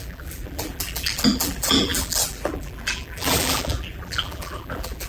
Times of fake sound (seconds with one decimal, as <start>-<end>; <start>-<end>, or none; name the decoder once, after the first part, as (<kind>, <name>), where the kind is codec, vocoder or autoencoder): 0.0-5.1 (vocoder, BigVGAN v2)